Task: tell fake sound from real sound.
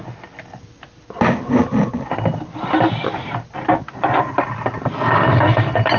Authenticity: real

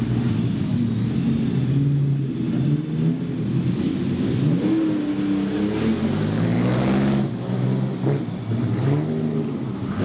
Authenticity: real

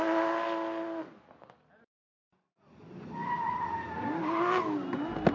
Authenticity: real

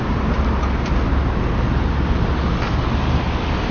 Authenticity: real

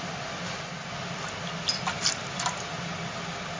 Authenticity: real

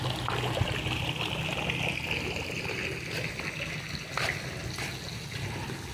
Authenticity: real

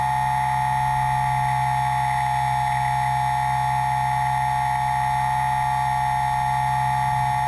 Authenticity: real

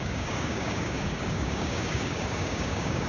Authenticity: fake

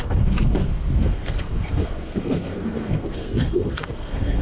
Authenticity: fake